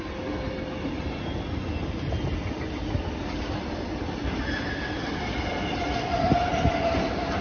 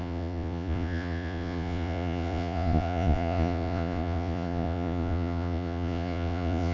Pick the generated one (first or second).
second